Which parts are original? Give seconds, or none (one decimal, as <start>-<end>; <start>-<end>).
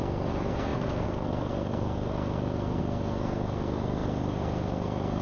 none